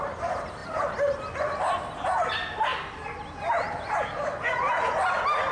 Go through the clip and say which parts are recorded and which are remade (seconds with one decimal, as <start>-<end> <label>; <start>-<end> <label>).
0.0-5.5 recorded